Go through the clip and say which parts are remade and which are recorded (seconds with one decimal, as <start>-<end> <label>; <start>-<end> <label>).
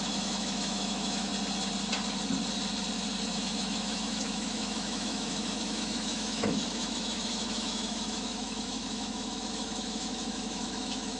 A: 0.0-1.3 remade; 1.3-3.3 recorded; 3.3-11.2 remade